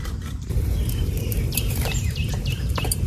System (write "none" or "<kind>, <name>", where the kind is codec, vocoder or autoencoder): vocoder, BigVGAN v2